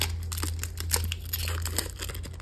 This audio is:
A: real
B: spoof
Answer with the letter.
A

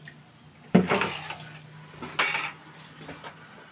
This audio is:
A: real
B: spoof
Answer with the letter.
A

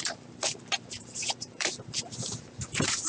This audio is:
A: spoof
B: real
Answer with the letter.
A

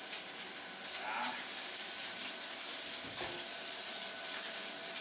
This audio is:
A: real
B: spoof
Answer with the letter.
B